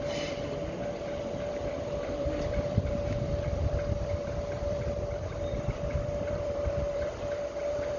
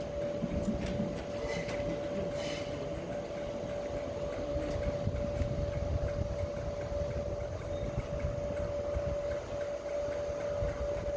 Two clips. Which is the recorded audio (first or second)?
second